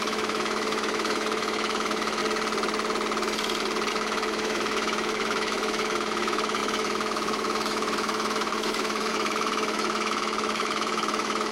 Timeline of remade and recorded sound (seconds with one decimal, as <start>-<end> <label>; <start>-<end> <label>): 0.0-2.2 remade; 2.2-3.9 recorded; 3.9-11.5 remade